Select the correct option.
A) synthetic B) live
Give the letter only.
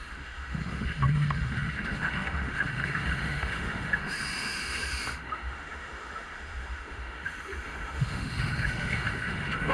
A